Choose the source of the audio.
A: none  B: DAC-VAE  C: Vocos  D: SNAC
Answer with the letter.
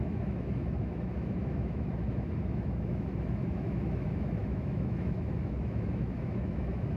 B